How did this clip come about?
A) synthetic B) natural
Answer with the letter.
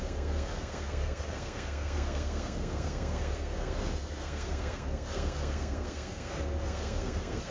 A